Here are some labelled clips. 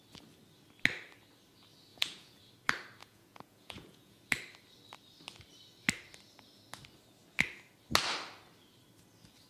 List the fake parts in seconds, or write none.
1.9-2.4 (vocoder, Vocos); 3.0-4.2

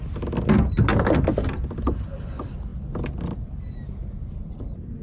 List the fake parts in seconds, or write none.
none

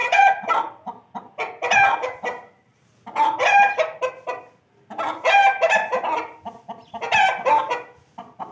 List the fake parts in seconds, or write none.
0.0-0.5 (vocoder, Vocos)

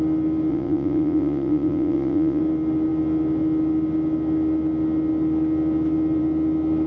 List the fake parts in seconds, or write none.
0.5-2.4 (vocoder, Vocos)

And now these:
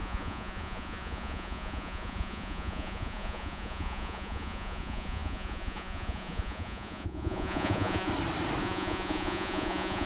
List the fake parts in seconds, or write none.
0.0-8.1 (vocoder, Vocos); 8.6-10.1

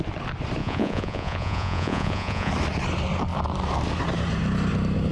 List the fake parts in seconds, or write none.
0.6-2.5 (vocoder, Vocos)

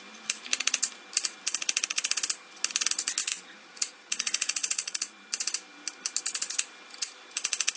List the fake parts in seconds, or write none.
3.2-5.1 (vocoder, Vocos)

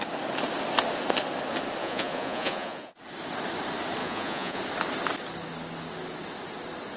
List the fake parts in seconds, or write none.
1.8-2.9 (vocoder, Vocos); 4.0-4.6